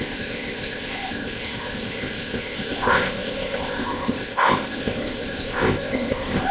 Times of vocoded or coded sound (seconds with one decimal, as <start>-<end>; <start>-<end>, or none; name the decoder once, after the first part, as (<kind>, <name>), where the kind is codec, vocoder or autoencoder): 0.0-6.5 (codec, ZipCodec)